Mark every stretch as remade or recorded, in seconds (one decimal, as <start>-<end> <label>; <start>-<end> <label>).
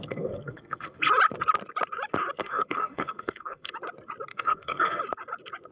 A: 0.0-1.0 remade; 1.0-2.4 recorded; 2.4-3.7 remade; 3.7-4.3 recorded; 4.3-5.0 remade; 5.0-5.7 recorded